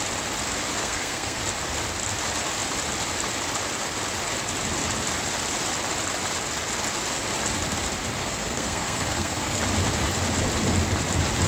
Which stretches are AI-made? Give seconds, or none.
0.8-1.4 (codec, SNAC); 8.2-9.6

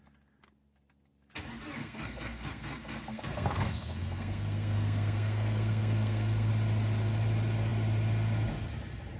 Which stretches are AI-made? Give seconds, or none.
1.8-6.5 (codec, SNAC)

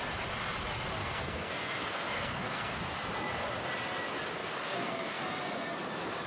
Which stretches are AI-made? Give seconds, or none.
1.0-2.8 (codec, SNAC); 4.4-5.2

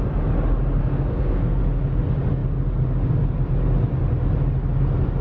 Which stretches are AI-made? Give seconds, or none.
0.8-1.6 (codec, SNAC)